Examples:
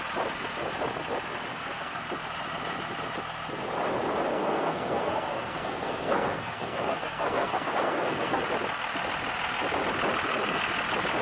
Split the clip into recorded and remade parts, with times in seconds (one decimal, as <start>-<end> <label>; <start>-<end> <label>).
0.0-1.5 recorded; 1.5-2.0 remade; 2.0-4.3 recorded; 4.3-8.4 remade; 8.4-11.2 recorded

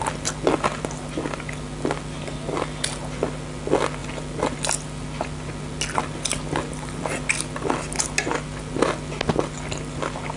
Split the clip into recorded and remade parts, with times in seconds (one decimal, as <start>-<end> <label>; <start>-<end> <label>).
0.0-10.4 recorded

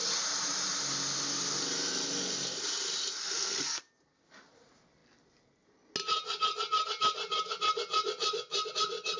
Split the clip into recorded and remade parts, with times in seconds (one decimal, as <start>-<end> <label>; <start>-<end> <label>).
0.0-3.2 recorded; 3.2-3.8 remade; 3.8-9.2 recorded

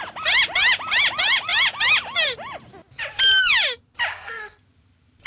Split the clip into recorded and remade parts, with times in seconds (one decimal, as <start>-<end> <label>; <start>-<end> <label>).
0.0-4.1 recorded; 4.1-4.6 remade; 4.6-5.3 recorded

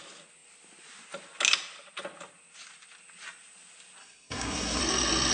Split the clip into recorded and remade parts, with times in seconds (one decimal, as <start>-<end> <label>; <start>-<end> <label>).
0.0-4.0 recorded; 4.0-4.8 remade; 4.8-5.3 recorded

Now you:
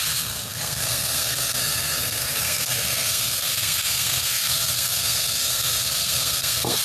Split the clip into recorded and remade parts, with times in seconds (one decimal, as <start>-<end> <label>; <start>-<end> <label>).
0.0-6.8 remade